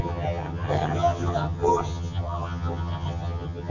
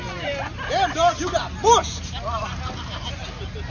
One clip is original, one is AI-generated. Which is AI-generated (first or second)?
first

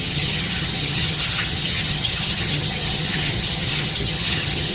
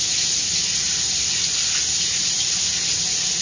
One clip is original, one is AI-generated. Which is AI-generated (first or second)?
first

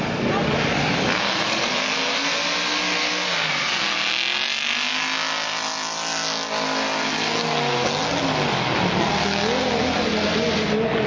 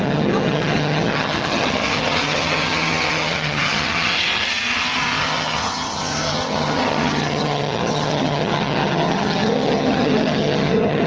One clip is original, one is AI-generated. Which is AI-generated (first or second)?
second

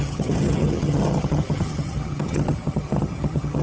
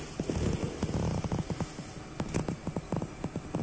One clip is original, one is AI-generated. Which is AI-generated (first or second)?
first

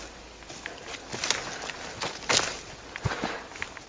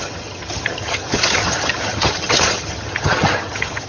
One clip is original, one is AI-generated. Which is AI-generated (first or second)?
second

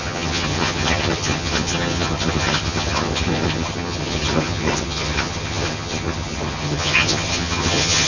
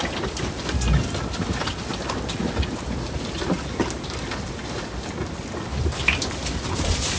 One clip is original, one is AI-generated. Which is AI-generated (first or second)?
first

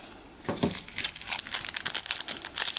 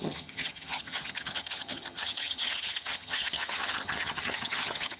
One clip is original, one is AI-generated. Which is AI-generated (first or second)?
second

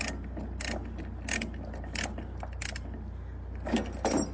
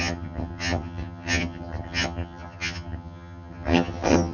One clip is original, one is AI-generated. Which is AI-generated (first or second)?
second